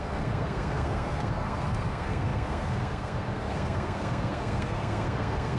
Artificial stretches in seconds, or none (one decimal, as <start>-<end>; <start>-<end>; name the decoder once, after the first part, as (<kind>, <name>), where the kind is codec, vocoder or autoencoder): 0.0-5.6 (codec, SNAC)